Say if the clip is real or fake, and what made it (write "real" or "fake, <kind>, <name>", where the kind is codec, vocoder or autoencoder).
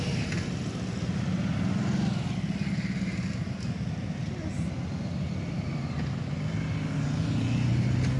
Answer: real